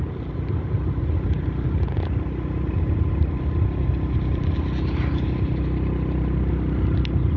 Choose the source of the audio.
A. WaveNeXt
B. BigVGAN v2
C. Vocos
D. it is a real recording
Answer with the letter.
D